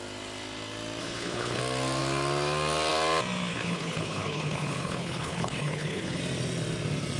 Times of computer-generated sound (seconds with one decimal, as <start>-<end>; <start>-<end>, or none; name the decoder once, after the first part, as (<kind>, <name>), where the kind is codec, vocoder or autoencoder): 1.0-1.6 (codec, HILCodec); 3.5-6.2